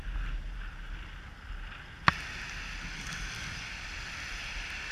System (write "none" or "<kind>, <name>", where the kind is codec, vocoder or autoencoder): none